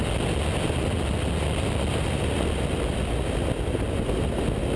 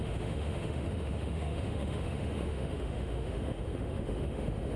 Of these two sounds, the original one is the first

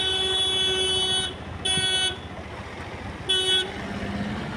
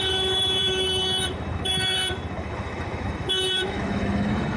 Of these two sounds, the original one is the first